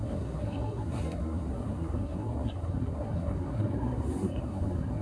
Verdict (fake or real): fake